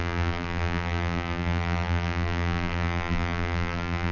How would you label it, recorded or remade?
remade